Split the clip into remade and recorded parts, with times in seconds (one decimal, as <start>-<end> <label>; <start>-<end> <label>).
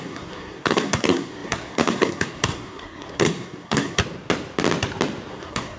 0.0-4.0 remade; 4.0-5.3 recorded; 5.3-5.8 remade